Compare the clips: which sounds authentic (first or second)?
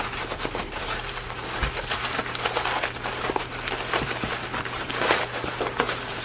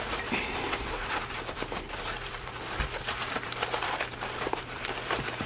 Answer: first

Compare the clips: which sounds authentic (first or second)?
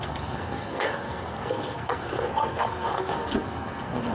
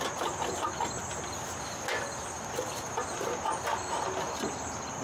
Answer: second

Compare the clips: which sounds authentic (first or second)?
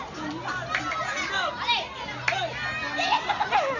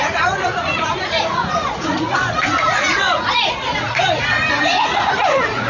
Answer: first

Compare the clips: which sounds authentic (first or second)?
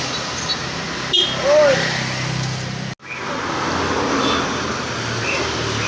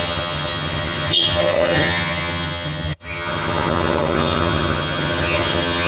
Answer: first